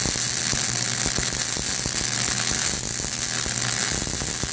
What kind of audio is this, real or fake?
real